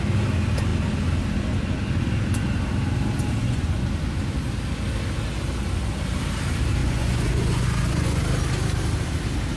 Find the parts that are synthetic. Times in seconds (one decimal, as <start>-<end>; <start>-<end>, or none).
3.4-3.9; 6.8-8.2